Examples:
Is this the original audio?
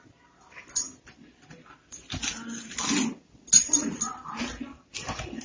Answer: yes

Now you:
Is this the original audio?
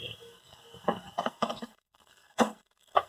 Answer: no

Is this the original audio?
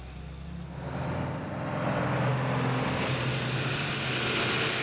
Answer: yes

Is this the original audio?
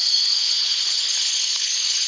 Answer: no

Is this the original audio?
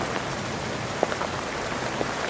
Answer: yes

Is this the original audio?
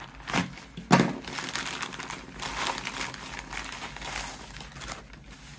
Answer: yes